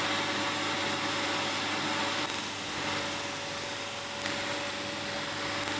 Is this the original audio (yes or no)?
yes